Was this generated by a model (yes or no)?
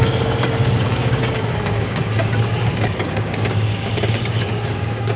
yes